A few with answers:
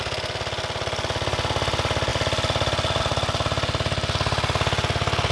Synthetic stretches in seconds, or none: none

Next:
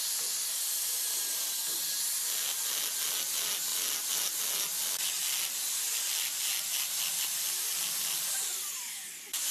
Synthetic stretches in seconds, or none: none